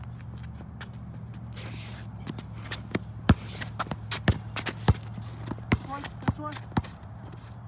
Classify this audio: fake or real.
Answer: real